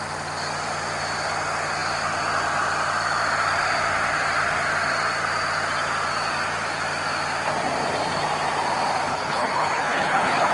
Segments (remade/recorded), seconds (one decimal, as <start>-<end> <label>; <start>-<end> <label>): 0.0-9.1 recorded; 9.1-10.5 remade